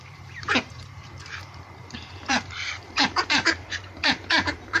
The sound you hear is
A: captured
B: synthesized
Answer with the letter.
B